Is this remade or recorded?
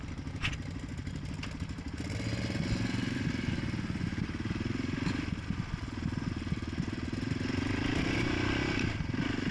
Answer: recorded